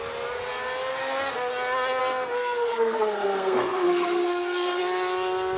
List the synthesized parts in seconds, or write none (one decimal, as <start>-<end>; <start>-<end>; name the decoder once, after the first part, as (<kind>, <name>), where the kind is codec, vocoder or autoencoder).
0.9-1.5 (codec, SNAC); 2.0-4.8